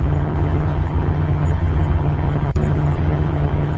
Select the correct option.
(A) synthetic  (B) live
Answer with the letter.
A